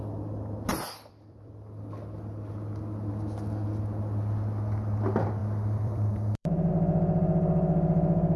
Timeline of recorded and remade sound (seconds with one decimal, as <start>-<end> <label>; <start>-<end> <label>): 0.0-0.7 recorded; 0.7-1.5 remade; 1.5-5.4 recorded; 5.4-6.7 remade; 6.7-8.4 recorded